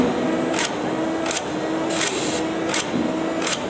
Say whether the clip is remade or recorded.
recorded